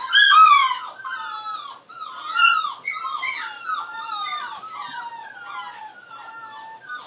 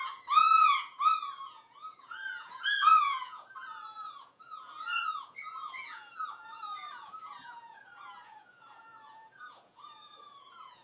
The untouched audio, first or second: first